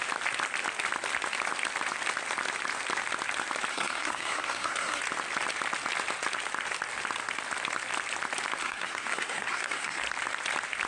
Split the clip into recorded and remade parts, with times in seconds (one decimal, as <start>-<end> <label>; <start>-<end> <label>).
0.0-3.7 recorded; 3.7-5.0 remade; 5.0-8.6 recorded; 8.6-10.0 remade; 10.0-10.9 recorded